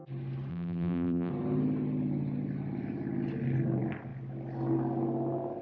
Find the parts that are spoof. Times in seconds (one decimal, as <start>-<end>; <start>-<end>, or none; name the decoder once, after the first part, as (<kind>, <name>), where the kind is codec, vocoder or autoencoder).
0.5-1.3 (vocoder, BigVGAN v2)